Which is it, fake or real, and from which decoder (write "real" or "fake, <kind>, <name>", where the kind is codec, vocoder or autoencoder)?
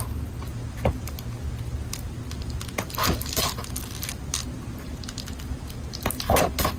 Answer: real